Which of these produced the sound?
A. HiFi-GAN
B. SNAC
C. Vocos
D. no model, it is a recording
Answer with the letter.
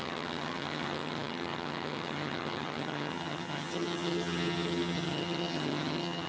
A